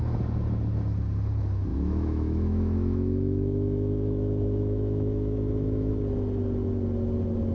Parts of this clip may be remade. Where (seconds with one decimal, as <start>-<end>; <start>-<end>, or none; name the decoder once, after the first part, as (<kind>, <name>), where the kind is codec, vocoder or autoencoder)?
1.7-5.9 (autoencoder, DAC-VAE)